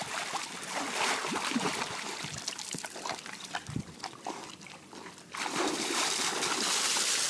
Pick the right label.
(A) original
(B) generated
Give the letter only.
A